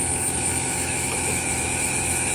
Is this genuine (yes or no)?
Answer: no